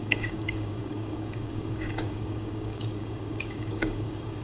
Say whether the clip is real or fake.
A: fake